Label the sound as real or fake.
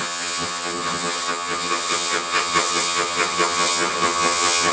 fake